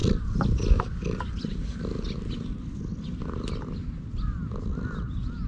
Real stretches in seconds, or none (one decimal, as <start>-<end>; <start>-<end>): 0.0-5.5